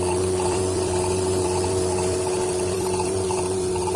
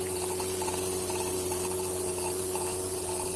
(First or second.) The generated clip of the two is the first